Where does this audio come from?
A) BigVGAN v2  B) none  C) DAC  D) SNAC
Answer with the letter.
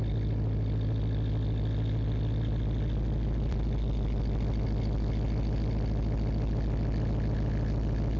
B